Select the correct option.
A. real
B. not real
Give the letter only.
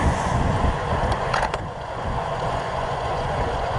B